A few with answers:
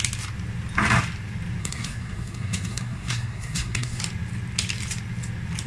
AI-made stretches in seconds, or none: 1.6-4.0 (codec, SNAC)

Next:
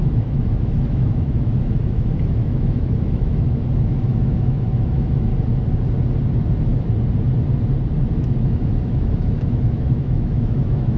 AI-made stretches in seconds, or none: 0.0-5.3 (autoencoder, DAC-VAE); 8.1-11.0

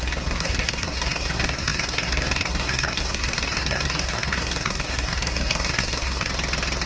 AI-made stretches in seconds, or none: 0.0-6.3 (codec, SNAC)

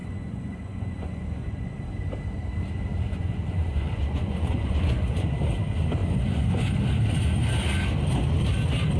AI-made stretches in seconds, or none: 0.0-1.7 (vocoder, Vocos); 2.9-5.3; 6.0-6.7

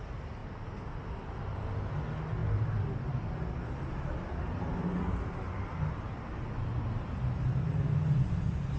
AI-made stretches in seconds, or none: none

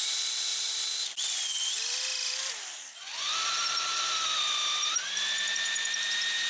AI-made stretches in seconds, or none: none